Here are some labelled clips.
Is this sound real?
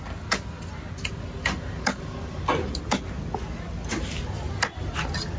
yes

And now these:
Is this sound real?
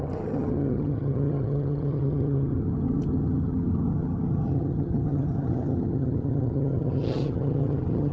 no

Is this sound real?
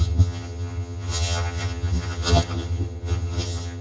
no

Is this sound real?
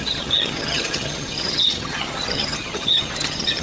no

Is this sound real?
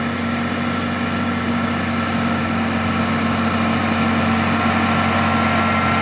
yes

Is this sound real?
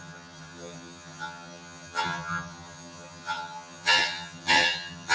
no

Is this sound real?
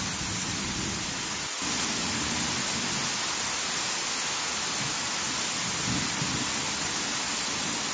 yes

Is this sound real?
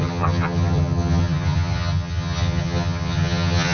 no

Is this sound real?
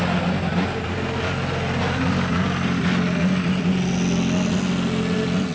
yes